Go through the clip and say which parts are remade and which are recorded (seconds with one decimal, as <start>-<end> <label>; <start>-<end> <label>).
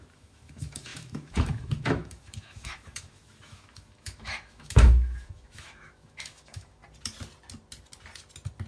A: 0.0-6.8 remade; 6.8-8.7 recorded